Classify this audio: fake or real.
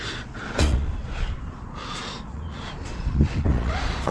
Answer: fake